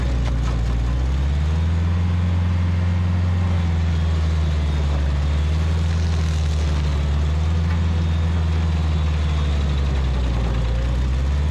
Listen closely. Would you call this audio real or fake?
real